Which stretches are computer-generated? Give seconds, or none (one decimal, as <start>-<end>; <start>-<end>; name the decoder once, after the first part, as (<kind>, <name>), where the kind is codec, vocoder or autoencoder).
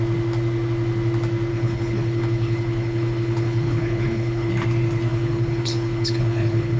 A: 1.5-4.5 (codec, HILCodec); 5.1-6.8